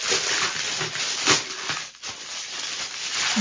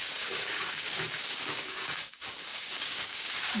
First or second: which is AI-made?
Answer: second